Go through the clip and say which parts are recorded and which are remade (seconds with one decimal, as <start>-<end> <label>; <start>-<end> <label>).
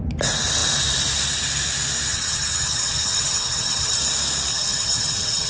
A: 0.0-2.1 recorded; 2.1-4.0 remade; 4.0-4.5 recorded; 4.5-5.5 remade